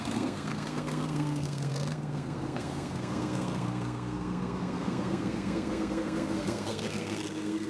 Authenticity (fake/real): fake